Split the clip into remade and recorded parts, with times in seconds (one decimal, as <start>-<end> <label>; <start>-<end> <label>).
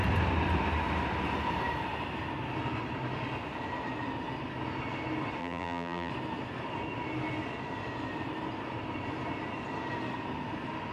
0.0-5.4 recorded; 5.4-6.1 remade; 6.1-10.9 recorded